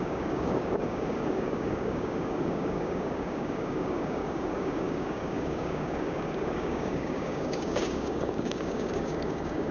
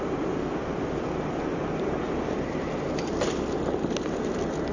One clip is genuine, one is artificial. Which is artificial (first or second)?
first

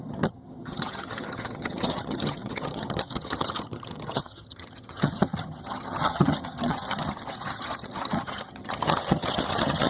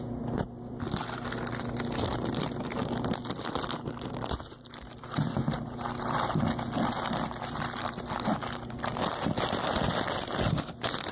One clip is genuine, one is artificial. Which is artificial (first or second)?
first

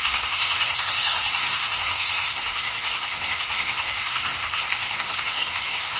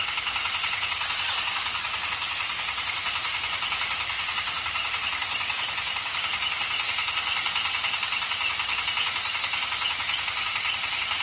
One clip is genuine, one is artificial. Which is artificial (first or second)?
first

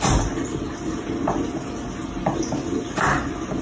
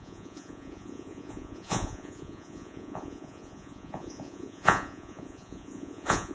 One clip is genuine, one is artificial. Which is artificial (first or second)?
second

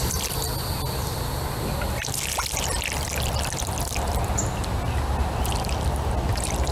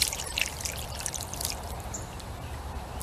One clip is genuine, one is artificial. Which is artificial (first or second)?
second